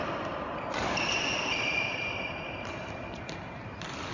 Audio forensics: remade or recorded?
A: recorded